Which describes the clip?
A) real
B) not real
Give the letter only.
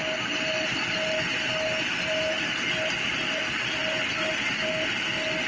A